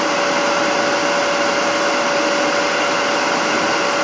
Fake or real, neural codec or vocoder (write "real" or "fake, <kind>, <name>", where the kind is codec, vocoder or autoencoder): real